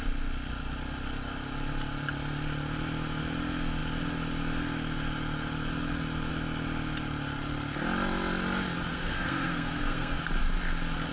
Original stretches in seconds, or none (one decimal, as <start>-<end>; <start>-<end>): 0.0-8.9; 10.2-11.1